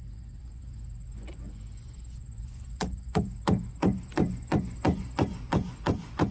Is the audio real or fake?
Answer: fake